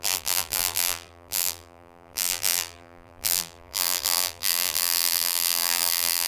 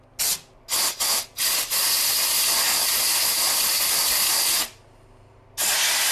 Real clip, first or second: second